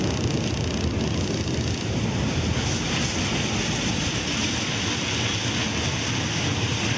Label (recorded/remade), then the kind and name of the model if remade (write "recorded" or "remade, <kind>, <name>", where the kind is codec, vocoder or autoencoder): recorded